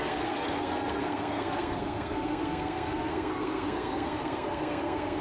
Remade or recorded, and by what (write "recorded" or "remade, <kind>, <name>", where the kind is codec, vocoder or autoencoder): remade, codec, SNAC